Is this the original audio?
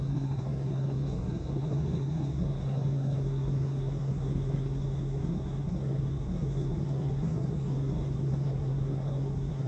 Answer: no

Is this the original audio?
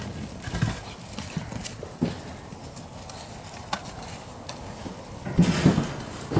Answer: yes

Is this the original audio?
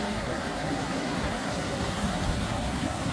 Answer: no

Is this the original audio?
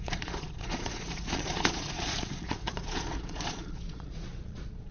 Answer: no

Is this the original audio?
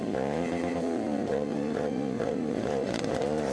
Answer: no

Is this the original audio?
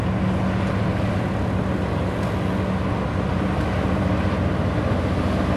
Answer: yes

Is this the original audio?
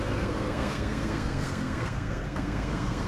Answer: no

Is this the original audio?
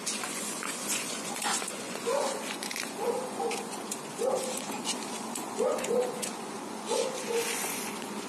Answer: no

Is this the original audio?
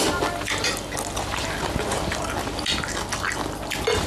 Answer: yes